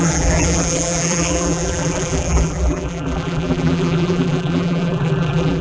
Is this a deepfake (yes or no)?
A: yes